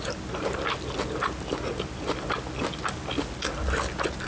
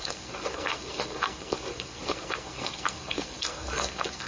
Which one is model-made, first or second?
second